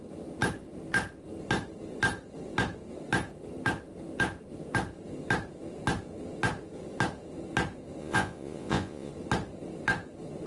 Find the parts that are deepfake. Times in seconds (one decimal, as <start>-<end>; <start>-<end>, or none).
8.0-9.1